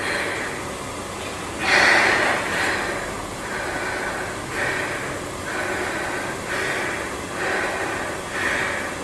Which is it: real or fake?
real